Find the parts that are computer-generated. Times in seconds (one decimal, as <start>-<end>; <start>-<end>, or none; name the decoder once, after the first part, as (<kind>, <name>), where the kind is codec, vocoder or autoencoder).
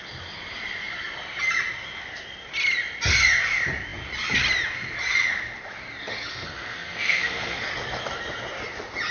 6.3-7.7 (codec, SNAC)